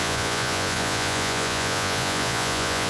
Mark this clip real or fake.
fake